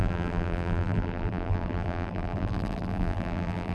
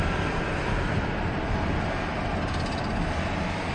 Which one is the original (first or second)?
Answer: second